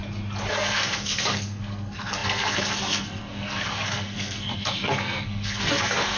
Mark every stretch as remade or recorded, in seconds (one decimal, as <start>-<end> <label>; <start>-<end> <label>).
0.0-0.5 recorded; 0.5-6.2 remade